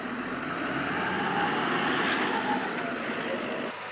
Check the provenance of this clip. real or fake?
real